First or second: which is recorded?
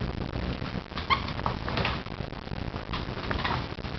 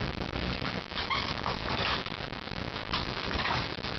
first